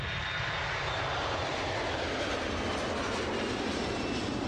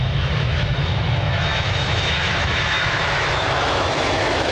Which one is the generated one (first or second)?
second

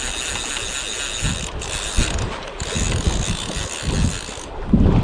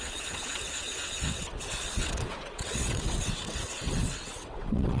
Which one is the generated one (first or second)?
second